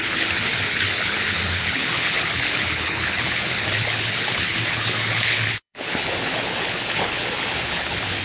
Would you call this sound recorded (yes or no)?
no